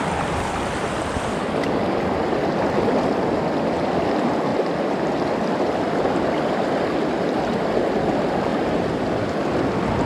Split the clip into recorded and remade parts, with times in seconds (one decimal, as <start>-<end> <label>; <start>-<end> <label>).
0.0-1.3 recorded; 1.3-2.0 remade; 2.0-10.1 recorded

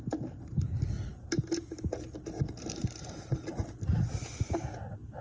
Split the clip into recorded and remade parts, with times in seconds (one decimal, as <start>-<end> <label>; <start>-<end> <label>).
0.0-5.2 recorded

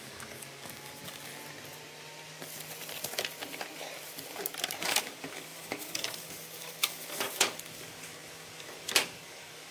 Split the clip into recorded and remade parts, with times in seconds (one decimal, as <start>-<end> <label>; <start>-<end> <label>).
0.0-1.3 remade; 1.3-4.8 recorded; 4.8-9.7 remade

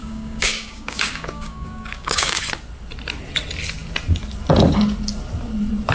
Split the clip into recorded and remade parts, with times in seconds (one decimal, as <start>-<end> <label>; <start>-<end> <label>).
0.0-2.4 remade; 2.4-5.9 recorded